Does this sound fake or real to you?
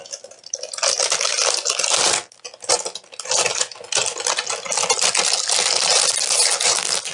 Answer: real